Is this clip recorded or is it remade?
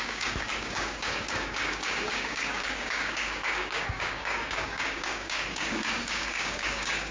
remade